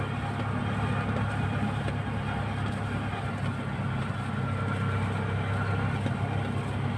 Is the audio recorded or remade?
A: recorded